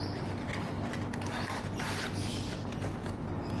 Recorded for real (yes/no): yes